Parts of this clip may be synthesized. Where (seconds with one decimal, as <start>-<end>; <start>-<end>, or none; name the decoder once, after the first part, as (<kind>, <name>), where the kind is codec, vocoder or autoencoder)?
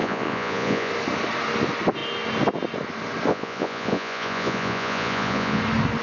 0.0-0.9 (vocoder, Vocos); 3.3-5.6